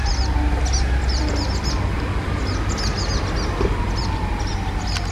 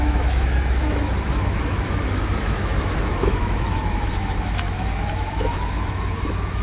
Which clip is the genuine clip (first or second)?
first